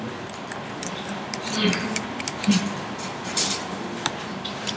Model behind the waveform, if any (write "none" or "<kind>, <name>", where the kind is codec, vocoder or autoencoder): none